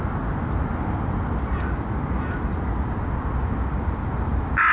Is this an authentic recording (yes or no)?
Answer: yes